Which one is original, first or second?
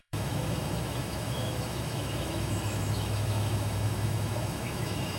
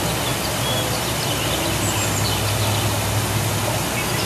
second